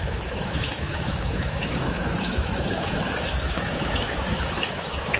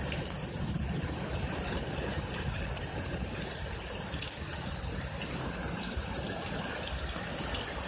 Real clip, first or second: second